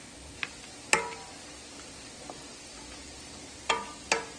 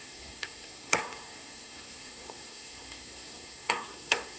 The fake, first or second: second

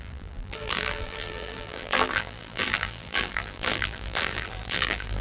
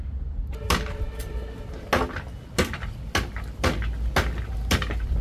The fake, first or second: first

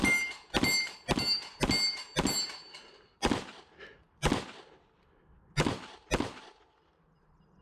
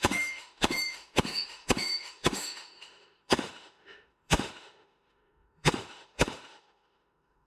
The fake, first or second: second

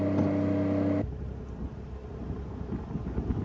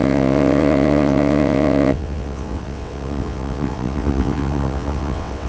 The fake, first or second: second